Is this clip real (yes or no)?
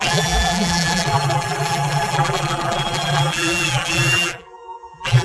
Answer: no